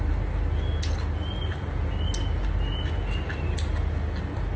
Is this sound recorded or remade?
recorded